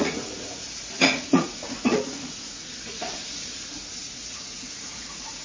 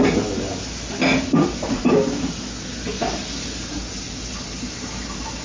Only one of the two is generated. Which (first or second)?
first